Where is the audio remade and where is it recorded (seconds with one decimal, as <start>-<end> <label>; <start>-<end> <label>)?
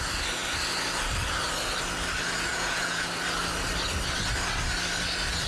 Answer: 0.0-2.5 recorded; 2.5-3.1 remade; 3.1-5.5 recorded